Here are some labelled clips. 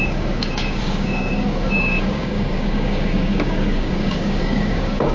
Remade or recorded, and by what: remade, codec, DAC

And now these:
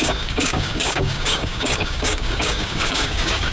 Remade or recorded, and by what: remade, codec, DAC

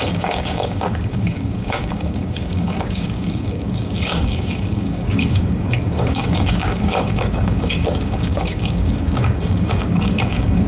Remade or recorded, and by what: remade, codec, DAC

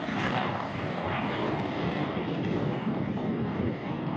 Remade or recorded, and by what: remade, codec, DAC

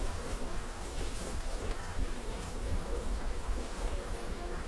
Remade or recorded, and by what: remade, codec, DAC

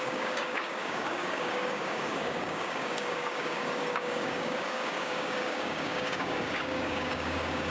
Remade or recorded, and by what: remade, codec, DAC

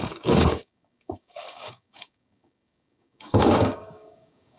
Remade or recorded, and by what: remade, codec, DAC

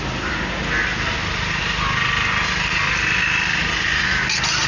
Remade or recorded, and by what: recorded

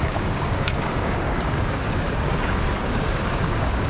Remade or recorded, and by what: remade, codec, DAC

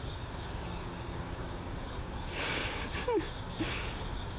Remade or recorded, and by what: remade, codec, DAC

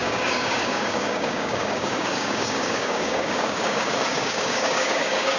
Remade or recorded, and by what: remade, codec, DAC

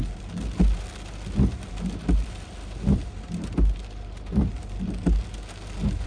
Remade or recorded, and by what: recorded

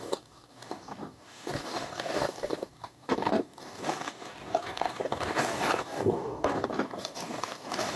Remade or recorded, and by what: remade, codec, DAC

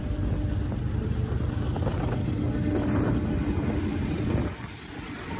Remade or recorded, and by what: recorded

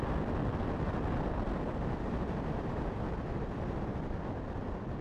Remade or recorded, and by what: recorded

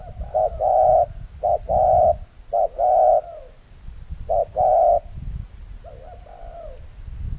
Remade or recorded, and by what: recorded